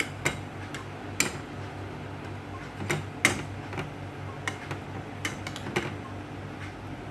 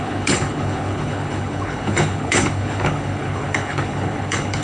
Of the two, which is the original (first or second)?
first